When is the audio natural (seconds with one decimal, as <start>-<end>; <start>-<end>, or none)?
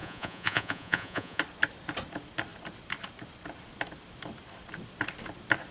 1.4-5.7